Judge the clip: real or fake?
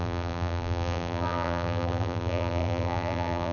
fake